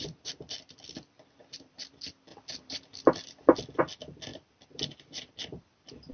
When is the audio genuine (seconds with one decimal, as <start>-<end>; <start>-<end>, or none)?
0.0-2.3; 3.8-4.3